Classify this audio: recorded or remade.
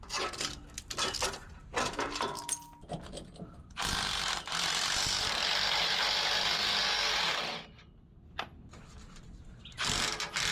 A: recorded